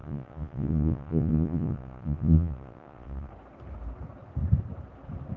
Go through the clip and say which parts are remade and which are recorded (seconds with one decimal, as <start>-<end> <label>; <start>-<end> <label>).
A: 0.0-3.3 remade; 3.3-5.4 recorded